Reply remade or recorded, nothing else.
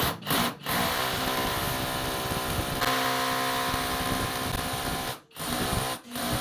recorded